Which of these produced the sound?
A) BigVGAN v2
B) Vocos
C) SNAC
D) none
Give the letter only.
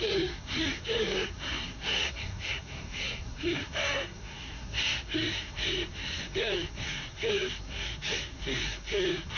C